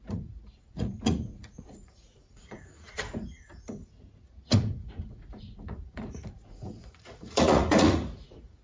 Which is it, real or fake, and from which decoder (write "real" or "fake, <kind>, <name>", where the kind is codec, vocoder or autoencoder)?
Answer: fake, vocoder, Vocos